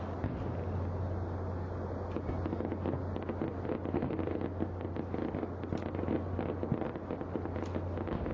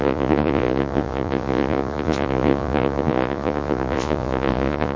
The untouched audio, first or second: first